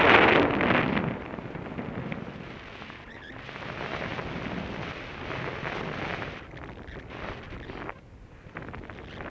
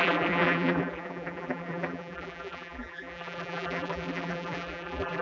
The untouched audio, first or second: first